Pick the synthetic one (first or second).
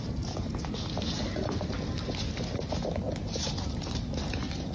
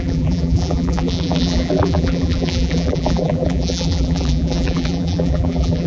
second